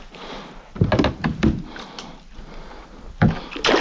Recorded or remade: recorded